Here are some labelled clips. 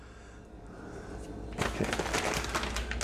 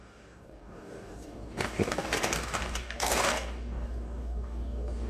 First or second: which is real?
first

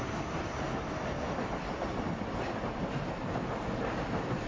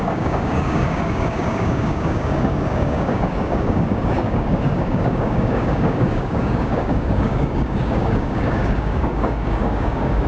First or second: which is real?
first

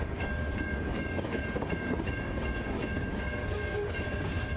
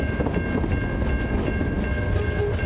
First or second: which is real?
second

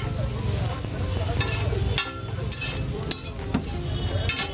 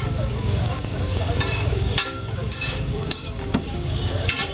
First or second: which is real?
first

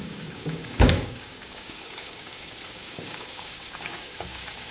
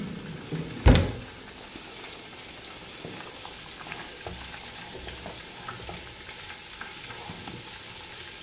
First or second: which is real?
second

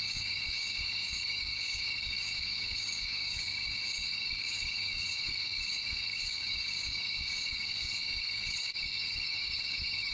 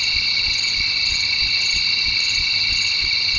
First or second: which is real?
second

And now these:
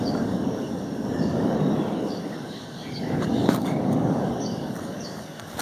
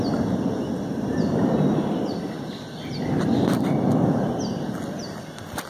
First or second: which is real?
second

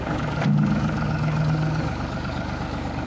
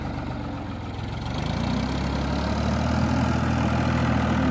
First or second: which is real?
second